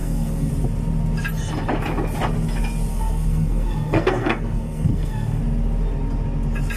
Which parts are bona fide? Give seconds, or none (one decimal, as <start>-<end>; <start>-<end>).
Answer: 0.5-2.9; 5.4-6.8